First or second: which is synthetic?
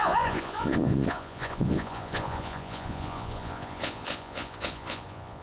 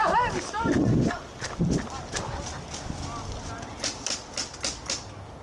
first